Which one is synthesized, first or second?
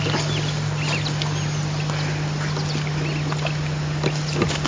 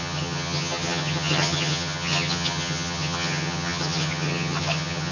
second